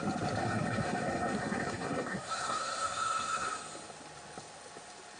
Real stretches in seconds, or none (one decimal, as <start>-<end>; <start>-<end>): 0.0-0.4; 3.5-5.2